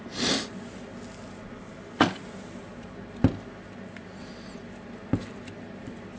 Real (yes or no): yes